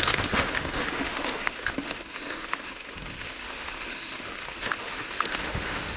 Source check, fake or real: fake